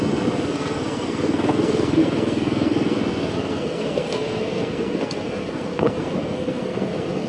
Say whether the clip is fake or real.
fake